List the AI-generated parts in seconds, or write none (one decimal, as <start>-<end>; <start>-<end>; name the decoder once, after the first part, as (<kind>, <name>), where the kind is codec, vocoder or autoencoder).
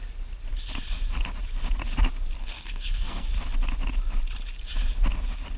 2.4-3.3 (codec, SNAC)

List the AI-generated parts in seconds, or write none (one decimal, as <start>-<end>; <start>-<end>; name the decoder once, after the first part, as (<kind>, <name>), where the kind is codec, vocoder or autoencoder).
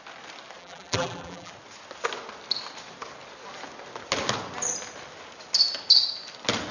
0.6-1.5 (vocoder, BigVGAN v2)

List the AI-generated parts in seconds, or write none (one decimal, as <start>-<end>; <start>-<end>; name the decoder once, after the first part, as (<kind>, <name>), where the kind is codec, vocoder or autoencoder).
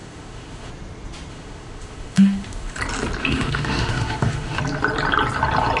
0.0-0.7 (autoencoder, DAC-VAE); 1.3-2.8; 3.2-4.6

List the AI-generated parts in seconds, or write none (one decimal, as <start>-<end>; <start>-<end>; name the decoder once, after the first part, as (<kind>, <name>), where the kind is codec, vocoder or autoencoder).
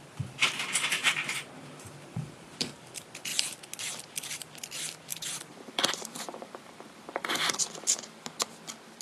1.0-2.8 (vocoder, BigVGAN v2); 5.1-7.6